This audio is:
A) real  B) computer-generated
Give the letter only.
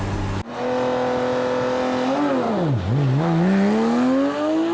A